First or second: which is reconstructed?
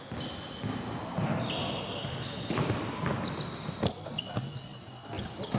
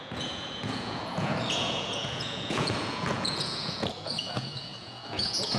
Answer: second